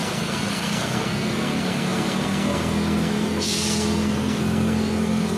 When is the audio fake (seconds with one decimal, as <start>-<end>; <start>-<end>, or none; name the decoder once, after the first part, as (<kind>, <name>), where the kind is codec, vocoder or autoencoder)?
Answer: 0.0-5.4 (codec, SNAC)